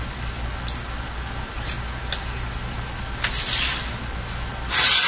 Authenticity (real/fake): real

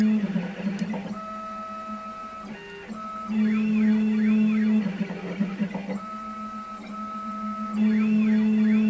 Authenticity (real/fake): real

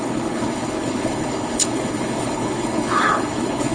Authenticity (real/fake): fake